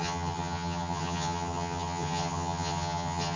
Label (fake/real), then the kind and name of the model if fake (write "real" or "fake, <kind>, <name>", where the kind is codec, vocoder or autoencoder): fake, vocoder, HiFi-GAN